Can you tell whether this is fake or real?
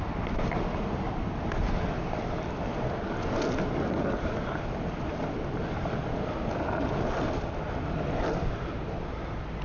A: real